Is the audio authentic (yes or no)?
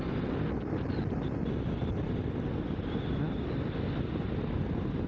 yes